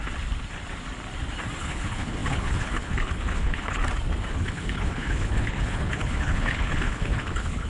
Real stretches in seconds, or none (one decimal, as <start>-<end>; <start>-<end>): 0.0-1.6; 3.8-4.3